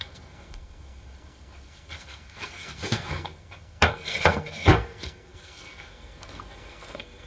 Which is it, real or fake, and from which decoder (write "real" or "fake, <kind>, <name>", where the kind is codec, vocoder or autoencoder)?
fake, codec, SNAC